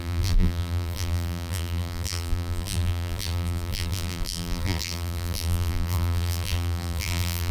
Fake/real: fake